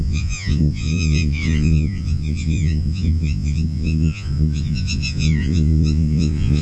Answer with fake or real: fake